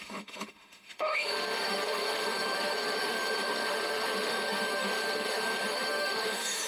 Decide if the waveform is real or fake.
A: fake